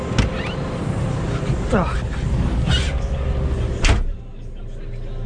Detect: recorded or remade recorded